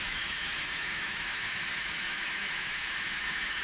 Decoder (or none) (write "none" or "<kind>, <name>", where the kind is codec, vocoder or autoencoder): autoencoder, DAC-VAE